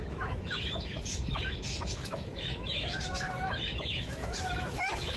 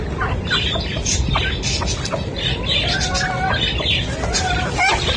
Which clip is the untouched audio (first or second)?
second